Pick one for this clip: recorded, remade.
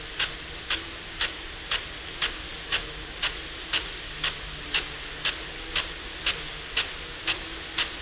recorded